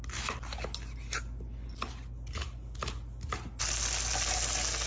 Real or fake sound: real